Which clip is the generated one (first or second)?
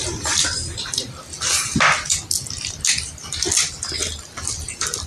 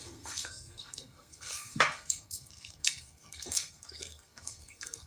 second